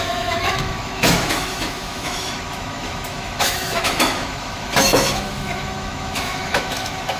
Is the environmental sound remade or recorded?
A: remade